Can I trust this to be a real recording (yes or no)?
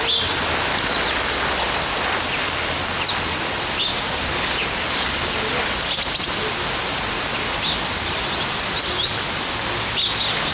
yes